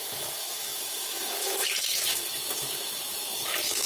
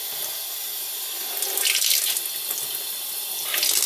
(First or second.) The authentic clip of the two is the second